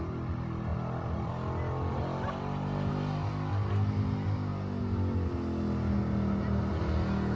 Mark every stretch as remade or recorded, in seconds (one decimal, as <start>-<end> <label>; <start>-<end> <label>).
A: 0.0-7.3 recorded